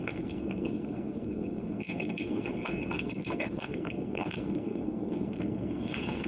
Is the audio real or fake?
fake